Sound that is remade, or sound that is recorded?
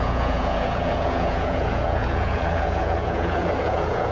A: remade